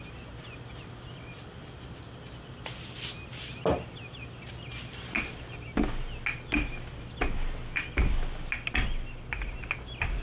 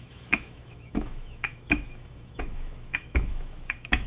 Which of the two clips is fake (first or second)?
second